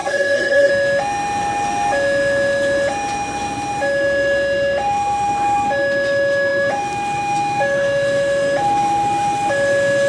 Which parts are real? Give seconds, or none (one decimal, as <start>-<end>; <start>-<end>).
0.7-10.1